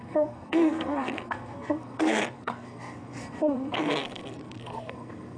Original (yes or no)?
no